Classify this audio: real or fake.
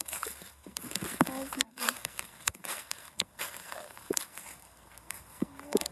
fake